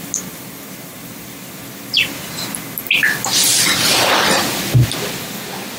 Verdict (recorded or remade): recorded